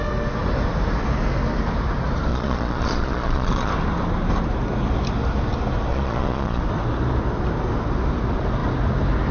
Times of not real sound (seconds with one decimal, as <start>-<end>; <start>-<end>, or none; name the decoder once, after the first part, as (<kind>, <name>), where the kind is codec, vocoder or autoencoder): 2.3-3.7 (vocoder, Vocos); 5.9-6.6